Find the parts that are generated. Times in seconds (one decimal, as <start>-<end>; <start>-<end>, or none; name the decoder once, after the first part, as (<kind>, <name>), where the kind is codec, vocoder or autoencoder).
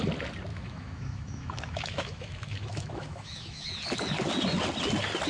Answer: 0.5-3.7 (autoencoder, DAC-VAE)